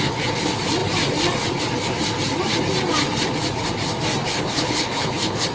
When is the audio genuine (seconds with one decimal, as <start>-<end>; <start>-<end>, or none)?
0.0-4.3